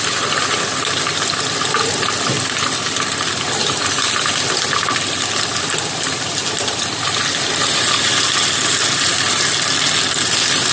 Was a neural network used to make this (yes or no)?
no